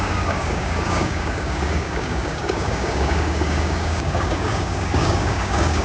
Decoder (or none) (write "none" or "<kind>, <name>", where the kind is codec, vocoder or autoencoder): codec, DAC